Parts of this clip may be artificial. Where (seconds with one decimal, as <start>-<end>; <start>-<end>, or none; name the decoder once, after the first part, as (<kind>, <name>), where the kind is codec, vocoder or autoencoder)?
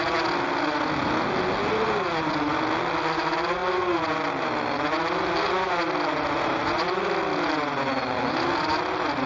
none